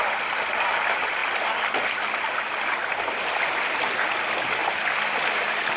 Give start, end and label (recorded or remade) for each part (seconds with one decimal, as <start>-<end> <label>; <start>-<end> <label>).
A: 0.0-5.8 recorded